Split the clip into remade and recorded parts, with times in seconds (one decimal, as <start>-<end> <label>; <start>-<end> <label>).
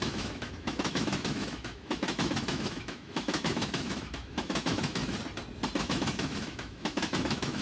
0.0-5.0 remade; 5.0-5.8 recorded; 5.8-7.6 remade